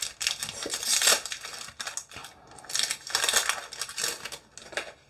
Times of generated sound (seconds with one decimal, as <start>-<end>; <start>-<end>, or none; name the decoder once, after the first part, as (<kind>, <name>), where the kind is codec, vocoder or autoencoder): none